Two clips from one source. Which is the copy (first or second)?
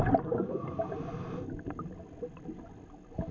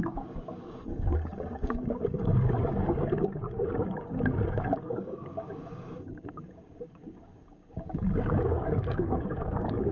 second